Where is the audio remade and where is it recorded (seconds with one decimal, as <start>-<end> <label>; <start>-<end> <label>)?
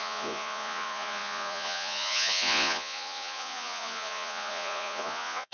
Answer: 0.0-5.5 remade